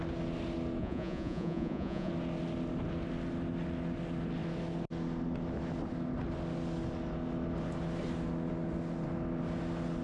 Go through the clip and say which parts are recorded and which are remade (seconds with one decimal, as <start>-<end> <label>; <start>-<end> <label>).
0.0-0.8 recorded; 0.8-2.1 remade; 2.1-10.0 recorded